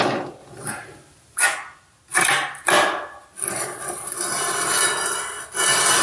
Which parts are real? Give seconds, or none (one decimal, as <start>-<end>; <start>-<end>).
0.0-6.0